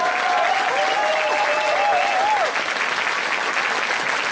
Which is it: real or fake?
real